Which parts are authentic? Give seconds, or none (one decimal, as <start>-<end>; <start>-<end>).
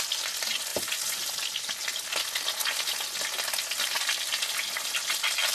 0.0-5.5